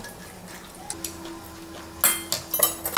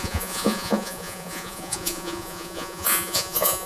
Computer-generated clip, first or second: second